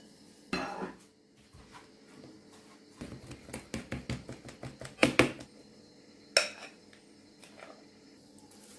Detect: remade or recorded recorded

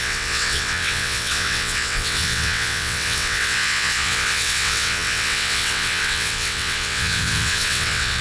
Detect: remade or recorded remade